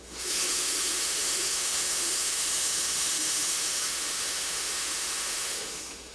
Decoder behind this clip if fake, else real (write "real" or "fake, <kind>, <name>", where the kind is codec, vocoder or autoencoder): fake, autoencoder, DAC-VAE